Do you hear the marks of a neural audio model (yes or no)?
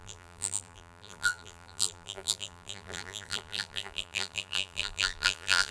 yes